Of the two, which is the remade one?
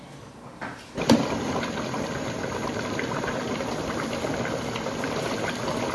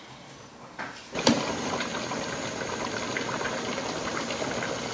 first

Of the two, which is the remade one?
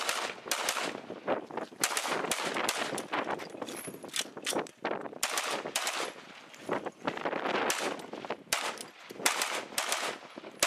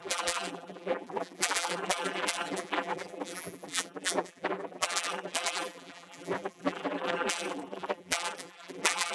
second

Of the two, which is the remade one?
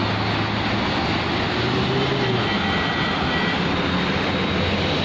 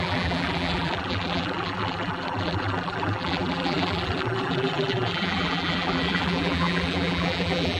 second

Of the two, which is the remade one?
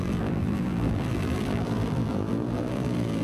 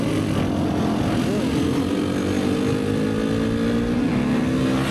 first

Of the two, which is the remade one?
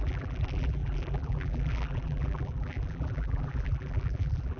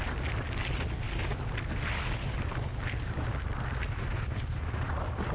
first